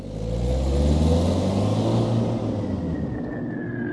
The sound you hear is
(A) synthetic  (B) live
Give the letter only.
B